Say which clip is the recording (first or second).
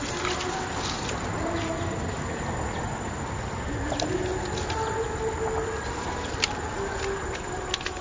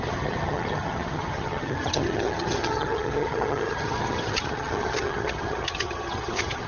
first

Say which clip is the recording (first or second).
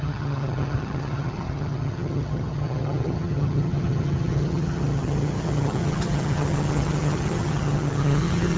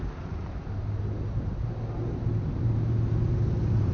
second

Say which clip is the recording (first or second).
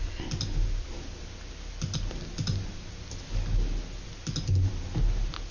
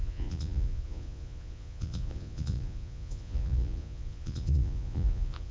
first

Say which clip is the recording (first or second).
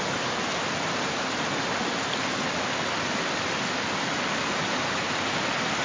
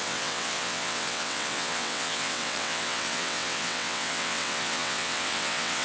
first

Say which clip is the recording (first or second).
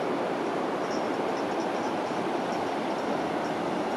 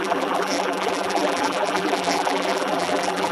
first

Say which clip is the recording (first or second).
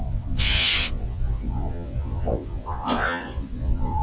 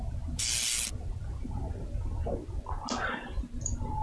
second